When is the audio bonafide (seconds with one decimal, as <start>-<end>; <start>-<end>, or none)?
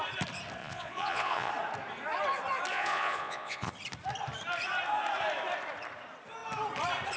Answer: 0.0-0.6; 1.5-2.7; 3.7-7.2